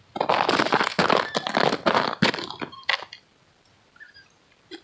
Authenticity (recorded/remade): recorded